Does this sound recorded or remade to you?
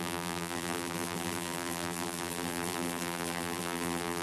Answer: remade